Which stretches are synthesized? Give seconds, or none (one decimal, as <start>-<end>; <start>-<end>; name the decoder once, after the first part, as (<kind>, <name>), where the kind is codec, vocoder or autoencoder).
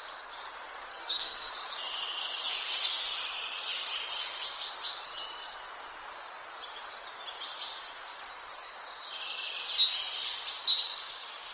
0.9-1.5 (codec, SNAC)